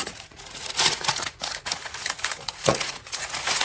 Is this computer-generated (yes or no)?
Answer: yes